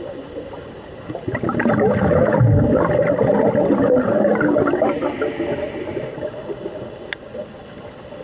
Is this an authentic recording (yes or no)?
yes